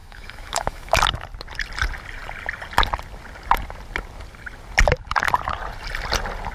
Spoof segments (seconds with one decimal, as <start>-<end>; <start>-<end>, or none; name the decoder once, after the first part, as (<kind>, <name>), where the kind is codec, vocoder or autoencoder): 0.0-1.0 (autoencoder, DAC-VAE)